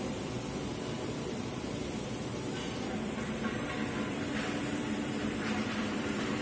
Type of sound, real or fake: fake